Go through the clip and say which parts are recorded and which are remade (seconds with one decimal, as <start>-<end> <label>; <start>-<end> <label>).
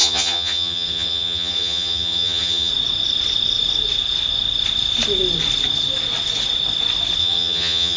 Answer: 0.0-2.7 remade; 2.7-7.2 recorded; 7.2-8.0 remade